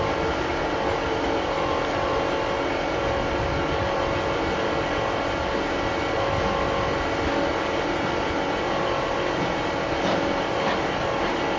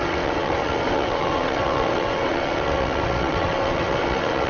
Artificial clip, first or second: second